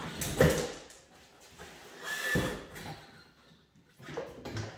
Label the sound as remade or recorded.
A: recorded